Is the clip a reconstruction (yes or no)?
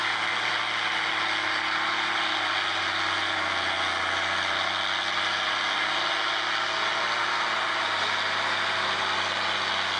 no